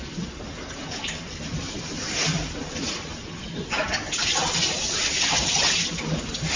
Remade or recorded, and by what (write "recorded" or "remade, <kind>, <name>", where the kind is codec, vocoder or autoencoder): remade, vocoder, BigVGAN v2